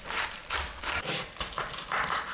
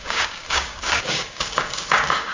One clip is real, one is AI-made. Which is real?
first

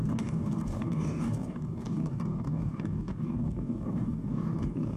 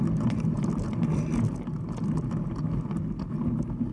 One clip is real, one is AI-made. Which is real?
second